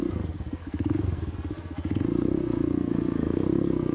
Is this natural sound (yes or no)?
no